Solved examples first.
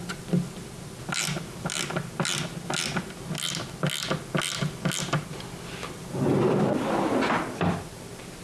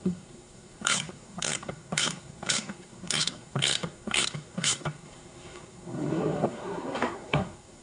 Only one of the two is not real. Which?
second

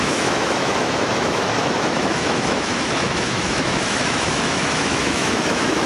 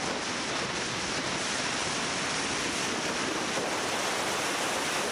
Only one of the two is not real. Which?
first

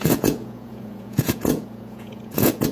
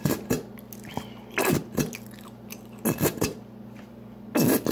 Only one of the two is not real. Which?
first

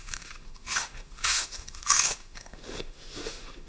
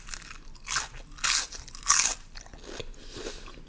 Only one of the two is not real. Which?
first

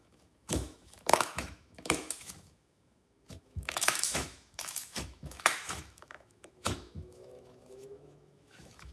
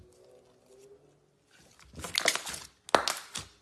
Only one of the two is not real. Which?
first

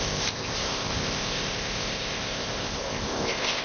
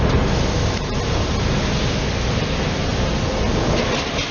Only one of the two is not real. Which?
first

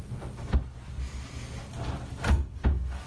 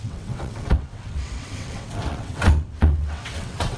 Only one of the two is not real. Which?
second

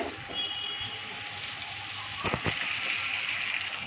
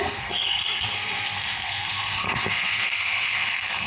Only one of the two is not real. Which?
second